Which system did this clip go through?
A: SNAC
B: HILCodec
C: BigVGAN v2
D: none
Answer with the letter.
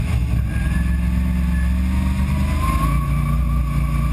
D